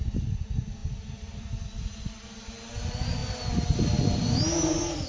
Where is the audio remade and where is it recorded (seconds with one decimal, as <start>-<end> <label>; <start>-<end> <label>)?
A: 0.0-5.1 recorded